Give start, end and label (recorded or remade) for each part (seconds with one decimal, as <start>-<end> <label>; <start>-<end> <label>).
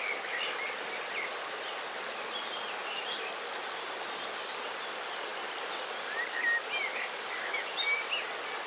0.0-8.7 recorded